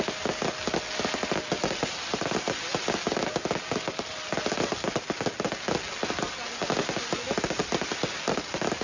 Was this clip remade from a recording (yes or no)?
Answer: no